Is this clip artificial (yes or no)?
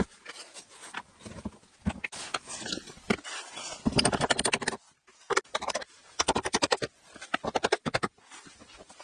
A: no